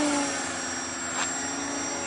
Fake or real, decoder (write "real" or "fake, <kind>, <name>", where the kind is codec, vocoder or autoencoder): real